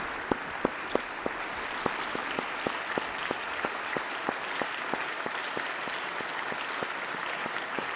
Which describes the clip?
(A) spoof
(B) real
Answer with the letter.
B